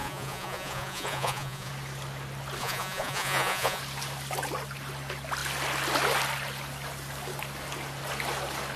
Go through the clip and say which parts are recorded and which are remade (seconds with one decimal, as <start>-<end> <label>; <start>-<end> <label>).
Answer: 0.0-1.7 remade; 1.7-2.6 recorded; 2.6-3.8 remade; 3.8-8.8 recorded